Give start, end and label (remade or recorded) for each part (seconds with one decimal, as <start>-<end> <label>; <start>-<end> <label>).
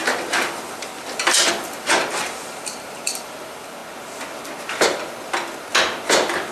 0.0-0.9 remade; 0.9-1.5 recorded; 1.5-3.8 remade; 3.8-6.5 recorded